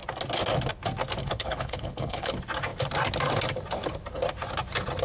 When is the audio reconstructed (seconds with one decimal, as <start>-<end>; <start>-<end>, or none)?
1.2-2.3